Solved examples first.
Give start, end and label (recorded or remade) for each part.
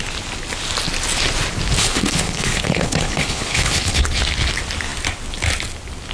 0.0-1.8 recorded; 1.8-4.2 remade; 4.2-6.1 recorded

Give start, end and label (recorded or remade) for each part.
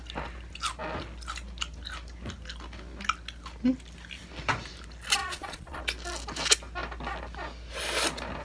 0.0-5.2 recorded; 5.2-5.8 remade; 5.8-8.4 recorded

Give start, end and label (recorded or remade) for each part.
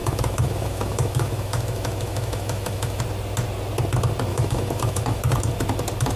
0.0-3.0 remade; 3.0-4.3 recorded; 4.3-5.2 remade; 5.2-6.2 recorded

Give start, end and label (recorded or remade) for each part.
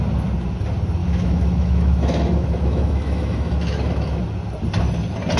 0.0-1.0 recorded; 1.0-4.2 remade; 4.2-5.4 recorded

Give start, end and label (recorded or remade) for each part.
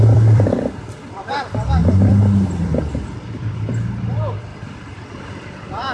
0.0-4.5 remade; 4.5-5.1 recorded; 5.1-5.9 remade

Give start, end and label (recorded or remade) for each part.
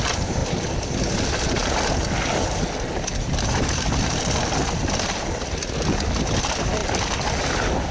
0.0-7.9 recorded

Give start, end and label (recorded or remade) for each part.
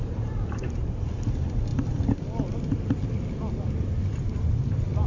0.0-5.1 recorded